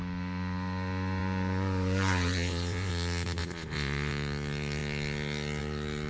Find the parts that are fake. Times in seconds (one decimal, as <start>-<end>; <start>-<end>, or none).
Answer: 1.2-2.9; 3.4-4.1